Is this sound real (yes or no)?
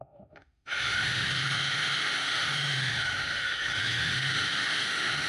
no